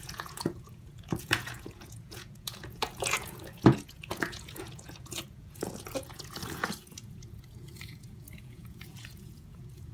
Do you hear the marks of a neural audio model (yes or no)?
yes